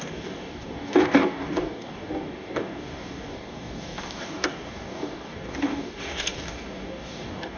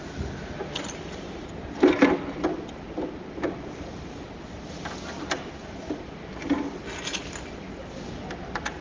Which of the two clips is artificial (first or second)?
first